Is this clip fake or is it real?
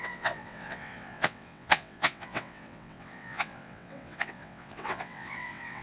fake